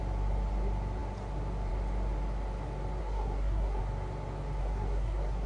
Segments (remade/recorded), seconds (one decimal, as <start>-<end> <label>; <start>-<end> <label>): 0.0-3.0 recorded; 3.0-3.8 remade; 3.8-4.6 recorded; 4.6-5.5 remade